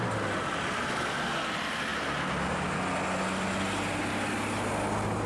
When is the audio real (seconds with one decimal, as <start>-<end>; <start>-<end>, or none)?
0.0-5.3